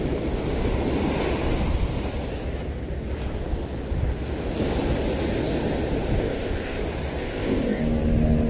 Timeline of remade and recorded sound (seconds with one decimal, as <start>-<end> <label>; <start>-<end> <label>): 0.0-6.2 recorded; 6.2-6.8 remade; 6.8-7.2 recorded; 7.2-7.8 remade; 7.8-8.5 recorded